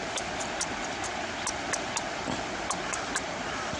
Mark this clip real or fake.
real